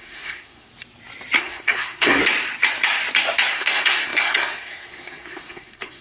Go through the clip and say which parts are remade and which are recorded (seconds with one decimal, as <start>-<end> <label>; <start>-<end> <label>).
0.0-0.7 remade; 0.7-1.4 recorded; 1.4-2.2 remade; 2.2-3.5 recorded; 3.5-6.0 remade